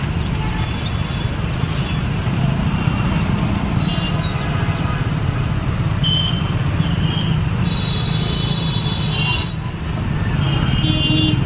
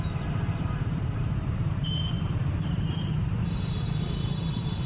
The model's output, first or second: second